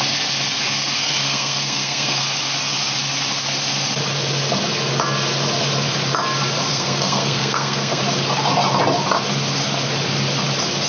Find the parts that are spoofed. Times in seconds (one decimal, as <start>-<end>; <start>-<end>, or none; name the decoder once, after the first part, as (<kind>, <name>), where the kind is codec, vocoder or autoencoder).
1.0-2.2 (codec, SNAC); 6.7-8.0